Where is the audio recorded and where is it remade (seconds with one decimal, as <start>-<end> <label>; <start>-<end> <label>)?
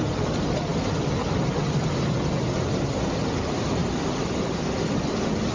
0.0-5.5 recorded